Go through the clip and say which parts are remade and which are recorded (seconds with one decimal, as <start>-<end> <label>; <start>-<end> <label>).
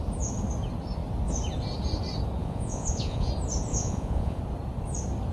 0.0-2.4 recorded; 2.4-3.3 remade; 3.3-3.7 recorded; 3.7-4.4 remade; 4.4-5.3 recorded